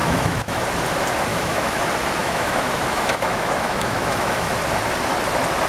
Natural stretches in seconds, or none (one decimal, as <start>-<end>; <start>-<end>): 0.6-1.3; 1.8-2.2; 4.5-5.7